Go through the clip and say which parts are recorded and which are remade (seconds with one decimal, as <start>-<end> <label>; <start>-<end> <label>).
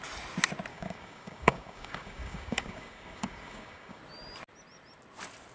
0.0-0.7 recorded; 0.7-4.0 remade; 4.0-5.5 recorded